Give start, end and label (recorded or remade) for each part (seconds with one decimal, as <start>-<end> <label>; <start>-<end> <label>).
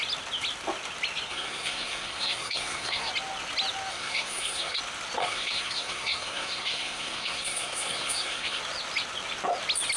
0.0-1.3 recorded; 1.3-3.1 remade; 3.1-3.9 recorded; 3.9-4.8 remade; 4.8-5.2 recorded; 5.2-8.6 remade; 8.6-10.0 recorded